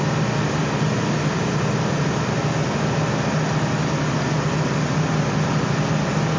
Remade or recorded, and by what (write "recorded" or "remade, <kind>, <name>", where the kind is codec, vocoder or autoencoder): recorded